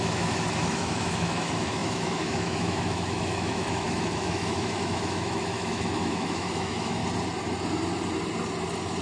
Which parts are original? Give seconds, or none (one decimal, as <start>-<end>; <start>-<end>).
7.0-9.0